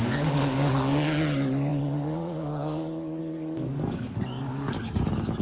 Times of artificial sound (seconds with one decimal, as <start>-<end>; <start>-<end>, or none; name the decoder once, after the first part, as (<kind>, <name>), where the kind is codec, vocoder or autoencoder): 0.0-5.4 (codec, DAC)